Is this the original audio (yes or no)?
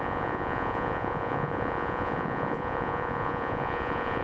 no